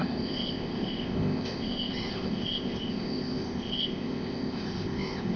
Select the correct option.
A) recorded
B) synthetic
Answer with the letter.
B